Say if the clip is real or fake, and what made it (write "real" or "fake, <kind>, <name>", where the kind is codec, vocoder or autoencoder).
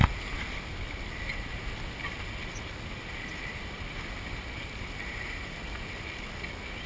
real